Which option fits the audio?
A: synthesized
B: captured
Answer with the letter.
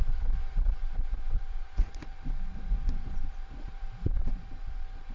A